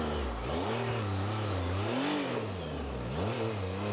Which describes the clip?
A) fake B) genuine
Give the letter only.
B